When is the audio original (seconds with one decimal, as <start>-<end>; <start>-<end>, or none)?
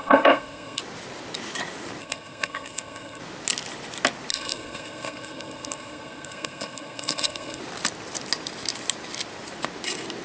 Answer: 0.8-2.0; 3.2-4.3; 7.6-10.2